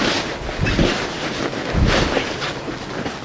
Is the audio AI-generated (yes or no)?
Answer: no